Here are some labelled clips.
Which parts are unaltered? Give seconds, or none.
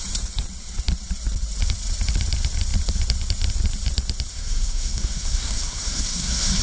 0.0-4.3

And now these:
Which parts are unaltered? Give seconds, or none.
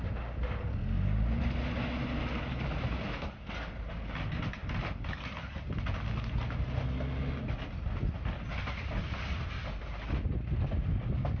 0.0-11.4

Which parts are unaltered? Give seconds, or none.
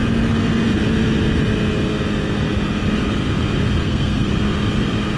0.0-3.8; 4.3-5.2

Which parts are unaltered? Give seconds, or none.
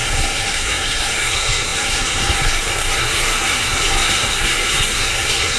none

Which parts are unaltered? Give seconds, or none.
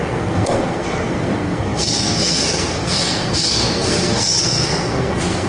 none